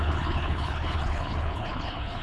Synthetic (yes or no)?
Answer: yes